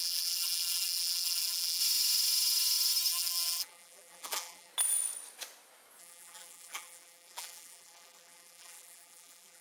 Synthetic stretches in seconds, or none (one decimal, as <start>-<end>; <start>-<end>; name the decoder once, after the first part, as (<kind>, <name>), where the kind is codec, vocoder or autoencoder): 0.0-1.8 (vocoder, BigVGAN v2); 3.1-4.7; 6.0-9.6